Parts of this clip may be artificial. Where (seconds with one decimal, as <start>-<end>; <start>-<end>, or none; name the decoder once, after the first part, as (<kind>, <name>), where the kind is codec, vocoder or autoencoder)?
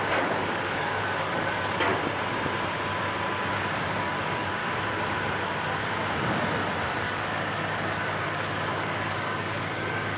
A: 0.0-1.9 (codec, DAC); 3.5-4.6; 6.9-10.2